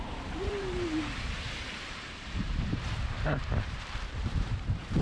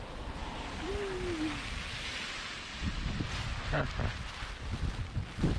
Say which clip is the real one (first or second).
second